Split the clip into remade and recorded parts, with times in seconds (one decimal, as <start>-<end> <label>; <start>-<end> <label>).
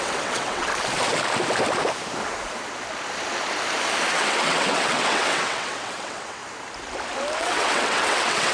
0.0-0.7 remade; 0.7-4.1 recorded; 4.1-6.4 remade; 6.4-7.4 recorded; 7.4-8.5 remade